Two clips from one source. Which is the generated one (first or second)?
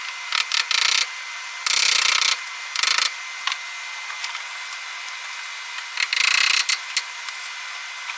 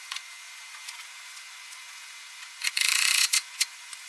second